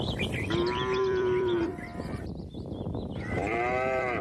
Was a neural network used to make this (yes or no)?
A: yes